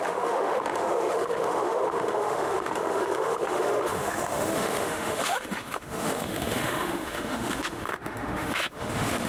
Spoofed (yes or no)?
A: yes